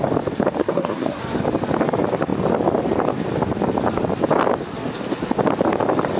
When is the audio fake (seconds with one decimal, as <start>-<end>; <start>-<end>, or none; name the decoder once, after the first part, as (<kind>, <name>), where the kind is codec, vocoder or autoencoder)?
0.6-1.2 (codec, SNAC)